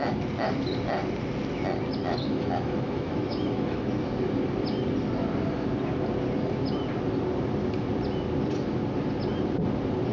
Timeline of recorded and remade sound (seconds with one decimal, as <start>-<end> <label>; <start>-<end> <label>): 0.0-2.0 recorded; 2.0-3.9 remade; 3.9-10.1 recorded